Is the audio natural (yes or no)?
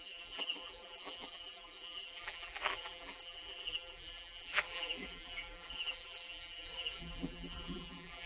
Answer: no